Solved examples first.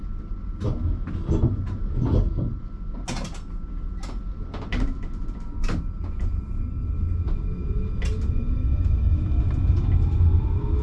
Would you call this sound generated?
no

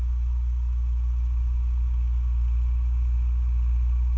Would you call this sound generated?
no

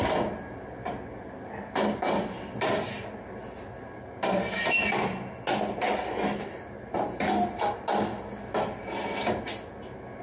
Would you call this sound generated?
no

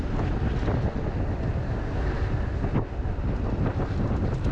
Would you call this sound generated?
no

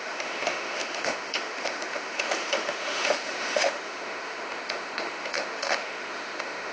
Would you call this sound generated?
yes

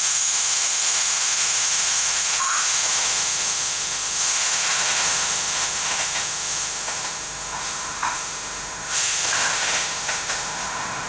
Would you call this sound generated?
yes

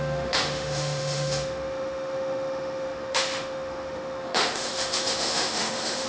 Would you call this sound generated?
yes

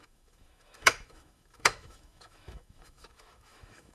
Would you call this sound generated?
yes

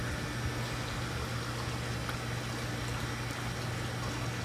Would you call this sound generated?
no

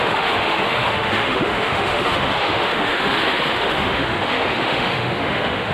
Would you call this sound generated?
yes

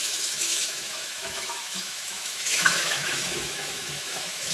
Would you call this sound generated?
yes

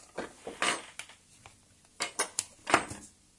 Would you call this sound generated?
no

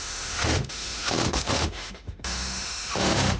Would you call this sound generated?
yes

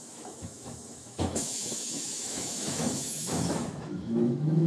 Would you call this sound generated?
yes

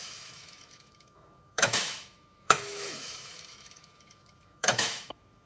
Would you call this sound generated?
yes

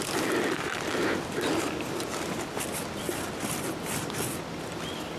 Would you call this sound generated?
no